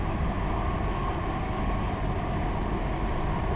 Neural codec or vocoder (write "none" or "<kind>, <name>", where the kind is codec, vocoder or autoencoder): none